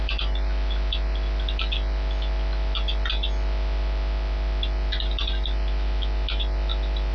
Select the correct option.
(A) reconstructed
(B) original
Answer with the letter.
B